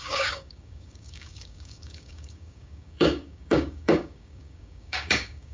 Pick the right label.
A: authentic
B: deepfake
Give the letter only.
B